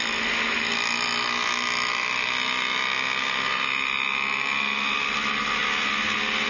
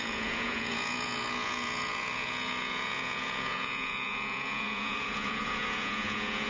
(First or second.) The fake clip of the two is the second